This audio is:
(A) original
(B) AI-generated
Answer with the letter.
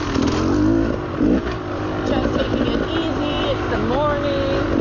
A